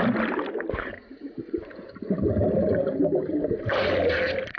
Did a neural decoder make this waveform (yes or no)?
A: no